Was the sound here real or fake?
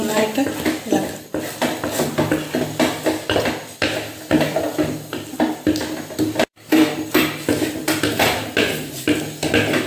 fake